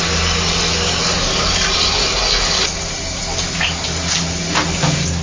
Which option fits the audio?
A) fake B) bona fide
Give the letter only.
B